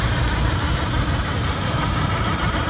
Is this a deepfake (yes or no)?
yes